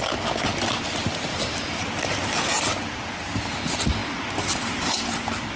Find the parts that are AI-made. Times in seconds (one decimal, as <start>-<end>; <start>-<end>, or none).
none